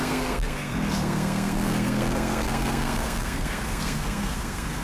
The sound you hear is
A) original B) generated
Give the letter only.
B